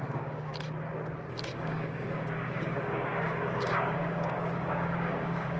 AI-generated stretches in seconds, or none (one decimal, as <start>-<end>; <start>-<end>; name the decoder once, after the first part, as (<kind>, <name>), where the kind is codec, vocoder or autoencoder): 0.0-0.5 (codec, DAC); 1.3-5.6